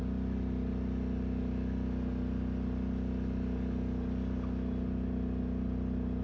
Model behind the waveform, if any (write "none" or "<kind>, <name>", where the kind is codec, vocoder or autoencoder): none